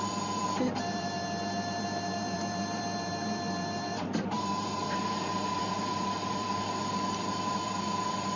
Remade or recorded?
remade